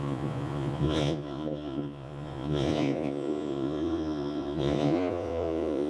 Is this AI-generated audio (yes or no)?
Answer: yes